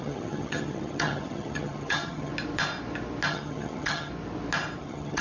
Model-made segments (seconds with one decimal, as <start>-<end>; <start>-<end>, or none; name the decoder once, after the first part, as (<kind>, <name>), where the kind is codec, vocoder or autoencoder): 0.0-2.3 (vocoder, HiFi-GAN); 3.3-4.1; 4.8-5.2